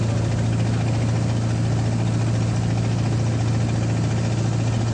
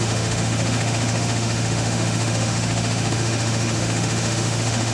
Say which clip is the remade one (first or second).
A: second